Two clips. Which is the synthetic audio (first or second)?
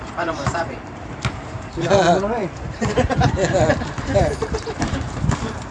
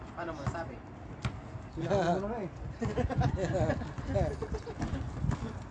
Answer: first